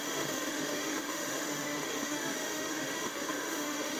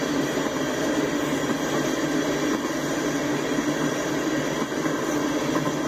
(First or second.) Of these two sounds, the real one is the second